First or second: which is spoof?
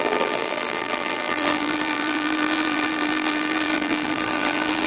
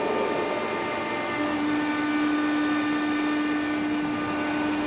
first